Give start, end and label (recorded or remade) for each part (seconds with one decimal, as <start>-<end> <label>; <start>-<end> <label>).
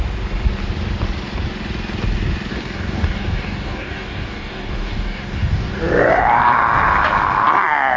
0.0-2.5 recorded; 2.5-5.8 remade; 5.8-8.0 recorded